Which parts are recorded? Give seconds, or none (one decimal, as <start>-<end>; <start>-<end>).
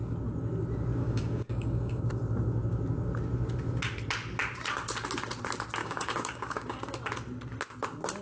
0.0-1.0; 2.0-5.8; 6.9-8.2